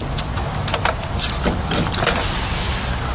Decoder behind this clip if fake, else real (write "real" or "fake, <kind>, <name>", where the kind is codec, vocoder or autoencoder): real